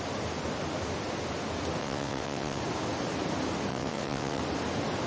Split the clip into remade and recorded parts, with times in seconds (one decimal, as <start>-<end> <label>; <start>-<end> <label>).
0.0-1.8 recorded; 1.8-2.6 remade; 2.6-3.7 recorded; 3.7-4.4 remade; 4.4-5.1 recorded